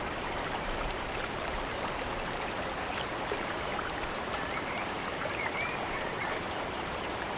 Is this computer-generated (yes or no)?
yes